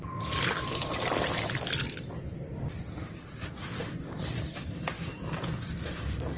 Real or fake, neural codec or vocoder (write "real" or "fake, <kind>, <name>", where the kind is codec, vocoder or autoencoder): fake, vocoder, BigVGAN v2